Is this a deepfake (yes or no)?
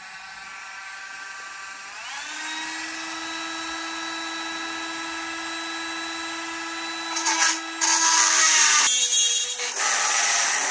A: no